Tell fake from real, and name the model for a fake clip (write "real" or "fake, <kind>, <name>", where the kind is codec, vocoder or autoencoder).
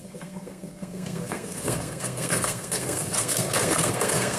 fake, codec, SNAC